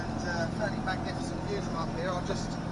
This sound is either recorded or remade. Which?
recorded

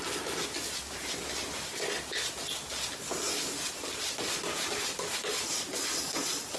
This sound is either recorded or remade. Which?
recorded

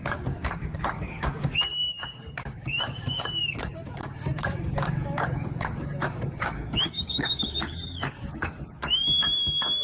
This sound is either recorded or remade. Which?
remade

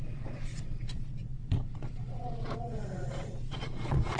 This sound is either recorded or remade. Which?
remade